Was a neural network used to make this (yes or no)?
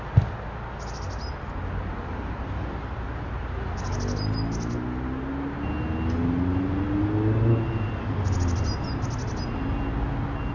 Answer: no